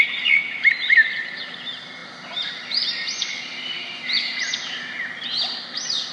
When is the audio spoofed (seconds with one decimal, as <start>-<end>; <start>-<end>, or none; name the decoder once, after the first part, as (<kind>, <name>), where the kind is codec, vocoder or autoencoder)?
0.4-1.5 (vocoder, BigVGAN v2); 3.5-4.4